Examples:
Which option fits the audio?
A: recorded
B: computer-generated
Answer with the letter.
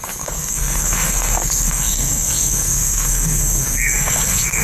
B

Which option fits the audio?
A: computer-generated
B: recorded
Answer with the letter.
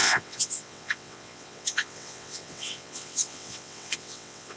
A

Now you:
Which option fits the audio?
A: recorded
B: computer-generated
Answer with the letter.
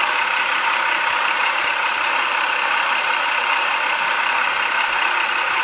B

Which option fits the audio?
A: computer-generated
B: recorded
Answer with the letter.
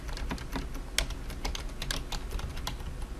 B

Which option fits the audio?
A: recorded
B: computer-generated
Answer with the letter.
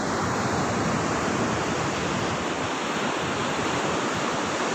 A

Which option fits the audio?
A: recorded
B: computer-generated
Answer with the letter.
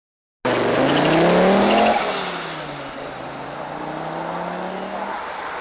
A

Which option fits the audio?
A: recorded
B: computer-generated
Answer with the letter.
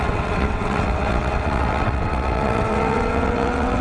B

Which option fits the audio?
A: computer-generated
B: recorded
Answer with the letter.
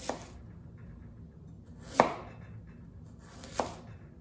B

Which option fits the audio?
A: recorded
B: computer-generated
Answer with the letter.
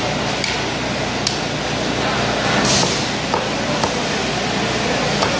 A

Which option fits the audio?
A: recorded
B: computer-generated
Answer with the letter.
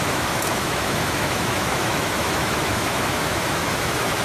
B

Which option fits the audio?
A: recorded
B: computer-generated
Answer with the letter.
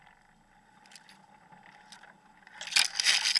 A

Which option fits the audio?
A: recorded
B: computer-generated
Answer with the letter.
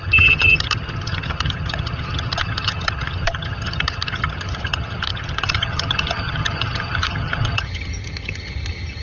B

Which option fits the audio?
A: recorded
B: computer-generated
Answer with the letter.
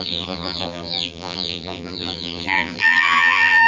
B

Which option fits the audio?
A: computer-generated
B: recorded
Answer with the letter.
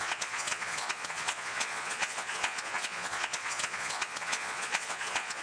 A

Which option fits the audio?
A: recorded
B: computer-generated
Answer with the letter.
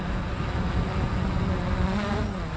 A